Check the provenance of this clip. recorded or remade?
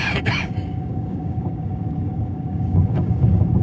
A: remade